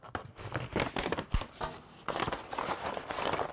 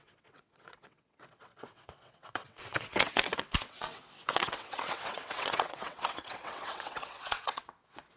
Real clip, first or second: first